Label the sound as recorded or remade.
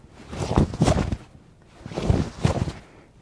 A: recorded